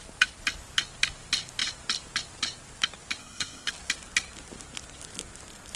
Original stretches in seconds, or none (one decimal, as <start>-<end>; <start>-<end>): 0.0-3.2; 3.7-5.8